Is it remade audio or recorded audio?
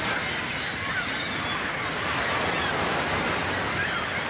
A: recorded